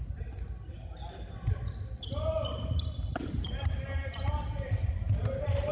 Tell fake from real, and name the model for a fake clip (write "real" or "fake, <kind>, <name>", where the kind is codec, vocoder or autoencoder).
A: real